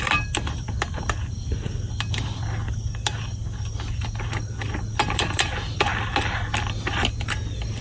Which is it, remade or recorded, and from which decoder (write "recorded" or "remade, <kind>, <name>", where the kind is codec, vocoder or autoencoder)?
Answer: recorded